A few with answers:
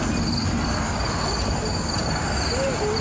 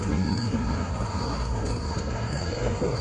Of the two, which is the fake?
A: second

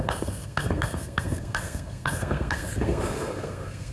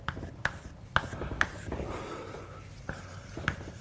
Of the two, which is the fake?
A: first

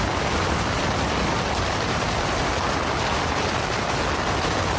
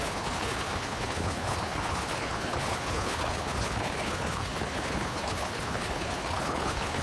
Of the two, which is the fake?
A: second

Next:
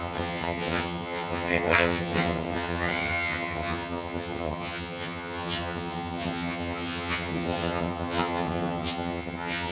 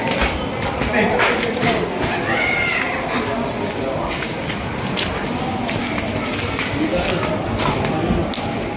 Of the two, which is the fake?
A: first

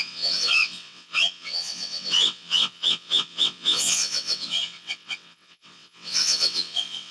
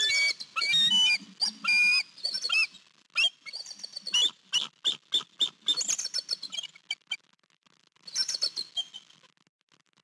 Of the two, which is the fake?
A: first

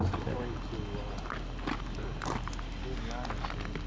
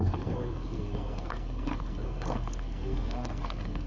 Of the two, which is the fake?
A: second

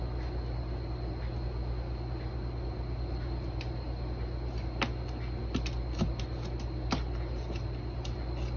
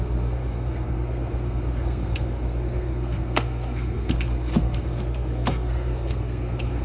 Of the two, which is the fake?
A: second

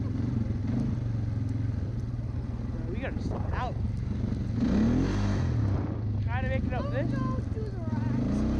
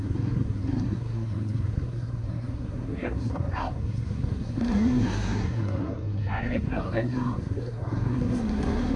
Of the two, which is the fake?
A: second